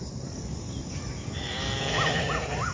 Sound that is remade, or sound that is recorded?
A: remade